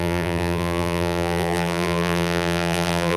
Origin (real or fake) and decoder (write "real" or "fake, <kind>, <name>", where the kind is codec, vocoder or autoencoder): fake, vocoder, BigVGAN v2